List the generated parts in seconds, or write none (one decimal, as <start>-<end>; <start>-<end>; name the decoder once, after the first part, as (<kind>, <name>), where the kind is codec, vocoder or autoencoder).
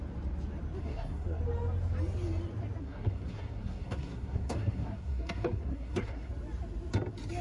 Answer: 0.8-1.4 (codec, SNAC); 2.8-6.3